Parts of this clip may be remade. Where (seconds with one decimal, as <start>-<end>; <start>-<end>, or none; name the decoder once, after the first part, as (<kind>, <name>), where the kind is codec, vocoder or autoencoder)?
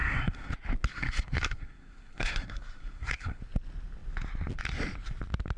0.0-0.5 (codec, SNAC); 0.9-3.4